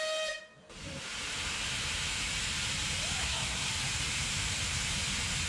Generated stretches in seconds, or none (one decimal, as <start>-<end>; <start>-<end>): 3.2-3.7